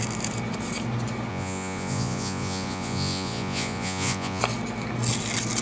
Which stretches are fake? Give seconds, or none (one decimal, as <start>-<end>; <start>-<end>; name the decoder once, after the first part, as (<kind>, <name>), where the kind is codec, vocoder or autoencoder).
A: 1.3-4.4 (vocoder, Vocos)

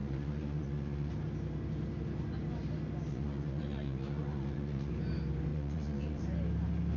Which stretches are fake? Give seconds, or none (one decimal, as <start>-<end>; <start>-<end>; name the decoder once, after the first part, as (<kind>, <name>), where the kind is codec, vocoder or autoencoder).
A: 0.0-1.1 (vocoder, Vocos); 3.1-4.9; 5.5-6.2

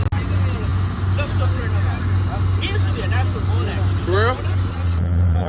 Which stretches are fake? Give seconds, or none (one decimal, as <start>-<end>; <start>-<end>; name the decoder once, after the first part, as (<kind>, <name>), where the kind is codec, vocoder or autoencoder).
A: 4.7-5.5 (vocoder, Vocos)

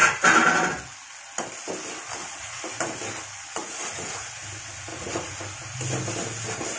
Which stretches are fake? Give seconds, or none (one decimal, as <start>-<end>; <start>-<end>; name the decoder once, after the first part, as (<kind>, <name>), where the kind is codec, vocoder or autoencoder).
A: 2.2-2.8 (vocoder, Vocos); 3.6-4.4; 4.9-5.4

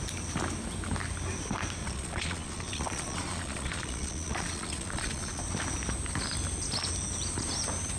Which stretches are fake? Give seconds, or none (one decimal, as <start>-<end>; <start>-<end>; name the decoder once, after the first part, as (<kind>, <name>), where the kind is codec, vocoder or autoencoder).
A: 1.8-5.4 (vocoder, Vocos)

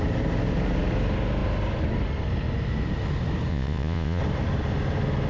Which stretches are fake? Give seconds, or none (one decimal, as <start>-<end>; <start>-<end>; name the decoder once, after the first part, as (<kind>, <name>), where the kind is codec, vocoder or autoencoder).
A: 3.5-4.2 (vocoder, Vocos)